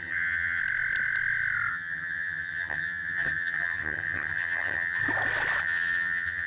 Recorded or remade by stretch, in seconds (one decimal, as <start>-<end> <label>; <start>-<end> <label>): 0.0-0.6 remade; 0.6-1.7 recorded; 1.7-5.0 remade; 5.0-5.6 recorded; 5.6-6.5 remade